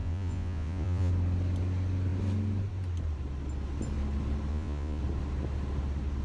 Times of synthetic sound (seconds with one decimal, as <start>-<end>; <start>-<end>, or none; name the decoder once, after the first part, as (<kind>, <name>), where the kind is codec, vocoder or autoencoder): 0.0-1.1 (vocoder, Vocos); 4.5-5.0